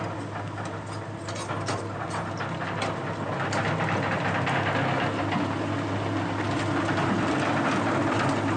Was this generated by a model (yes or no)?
no